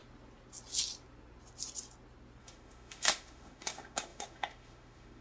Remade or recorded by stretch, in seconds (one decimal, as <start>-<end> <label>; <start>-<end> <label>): 0.0-2.4 recorded; 2.4-5.2 remade